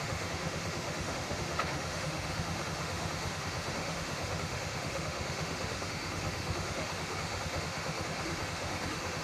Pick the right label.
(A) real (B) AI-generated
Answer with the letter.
B